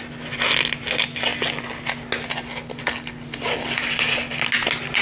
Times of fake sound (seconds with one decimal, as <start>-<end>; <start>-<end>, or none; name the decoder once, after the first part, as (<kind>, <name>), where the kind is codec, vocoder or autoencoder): none